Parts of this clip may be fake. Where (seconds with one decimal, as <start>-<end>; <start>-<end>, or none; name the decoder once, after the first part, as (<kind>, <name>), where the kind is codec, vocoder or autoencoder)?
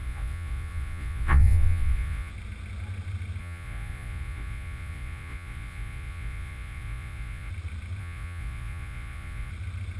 0.0-2.3 (vocoder, Vocos); 3.4-7.5; 8.0-9.5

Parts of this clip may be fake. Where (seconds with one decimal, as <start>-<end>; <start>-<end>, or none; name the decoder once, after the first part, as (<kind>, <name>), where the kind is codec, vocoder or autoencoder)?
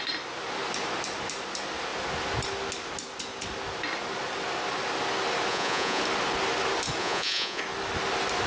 5.5-6.0 (vocoder, Vocos); 7.0-7.6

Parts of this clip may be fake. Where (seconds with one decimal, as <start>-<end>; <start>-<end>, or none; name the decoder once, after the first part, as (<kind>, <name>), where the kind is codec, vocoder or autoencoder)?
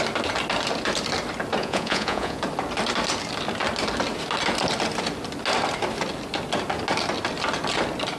1.6-2.4 (vocoder, Vocos)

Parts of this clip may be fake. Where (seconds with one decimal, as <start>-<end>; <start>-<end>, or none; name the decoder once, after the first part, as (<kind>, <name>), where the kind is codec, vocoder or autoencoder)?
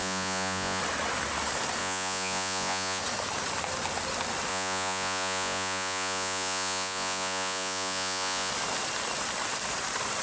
0.0-0.8 (vocoder, Vocos); 1.8-3.0; 4.5-8.5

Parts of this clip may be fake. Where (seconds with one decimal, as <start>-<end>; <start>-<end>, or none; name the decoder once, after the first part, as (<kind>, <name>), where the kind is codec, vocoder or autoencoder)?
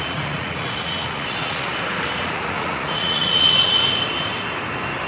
0.0-1.7 (vocoder, Vocos); 2.2-3.8